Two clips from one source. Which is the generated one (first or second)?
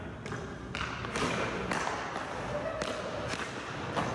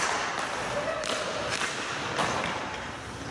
second